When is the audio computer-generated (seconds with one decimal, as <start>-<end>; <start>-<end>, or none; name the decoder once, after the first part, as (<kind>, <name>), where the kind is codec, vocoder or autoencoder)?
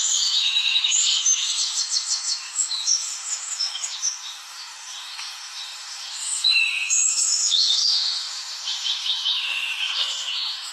0.0-10.7 (autoencoder, DAC-VAE)